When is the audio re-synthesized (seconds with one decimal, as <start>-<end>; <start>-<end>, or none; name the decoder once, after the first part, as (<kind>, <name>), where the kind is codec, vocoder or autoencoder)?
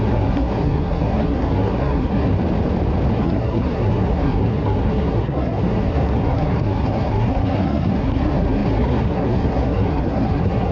0.0-2.3 (codec, SNAC); 3.1-10.7